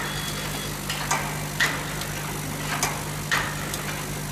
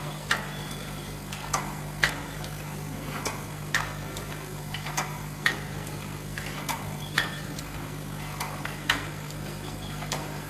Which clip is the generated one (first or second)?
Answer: second